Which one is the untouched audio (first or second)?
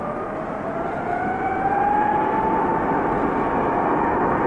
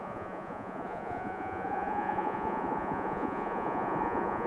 first